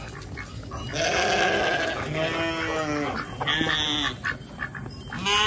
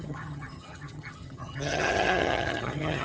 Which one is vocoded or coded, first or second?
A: second